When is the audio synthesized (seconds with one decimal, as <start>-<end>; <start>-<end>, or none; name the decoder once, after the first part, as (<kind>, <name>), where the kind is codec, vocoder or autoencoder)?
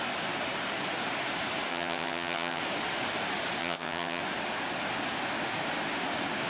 1.7-2.6 (vocoder, HiFi-GAN); 3.6-4.2